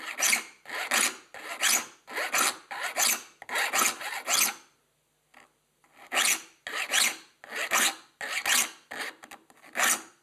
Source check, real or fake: real